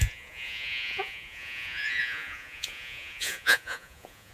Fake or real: fake